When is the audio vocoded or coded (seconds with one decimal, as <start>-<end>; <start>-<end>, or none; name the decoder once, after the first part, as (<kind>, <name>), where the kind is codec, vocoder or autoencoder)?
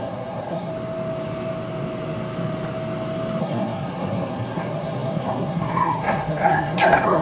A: 0.0-0.7 (codec, SNAC); 3.4-7.2